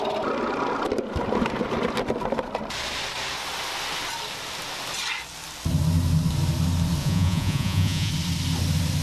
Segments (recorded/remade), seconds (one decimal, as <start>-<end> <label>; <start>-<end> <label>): 0.0-7.0 recorded; 7.0-8.1 remade; 8.1-9.0 recorded